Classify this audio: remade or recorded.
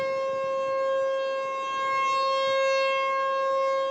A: recorded